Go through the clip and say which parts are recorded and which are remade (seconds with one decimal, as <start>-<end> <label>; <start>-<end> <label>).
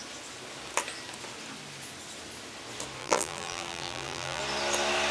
0.0-3.0 recorded; 3.0-4.4 remade; 4.4-5.1 recorded